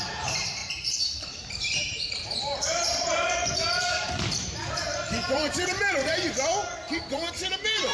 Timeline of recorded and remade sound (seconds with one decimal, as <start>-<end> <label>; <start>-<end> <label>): 0.0-6.1 remade; 6.1-6.7 recorded; 6.7-7.9 remade